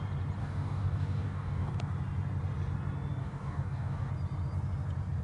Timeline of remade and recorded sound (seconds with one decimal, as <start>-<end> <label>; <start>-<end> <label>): 0.0-0.4 recorded; 0.4-1.7 remade; 1.7-3.2 recorded; 3.2-4.1 remade; 4.1-5.2 recorded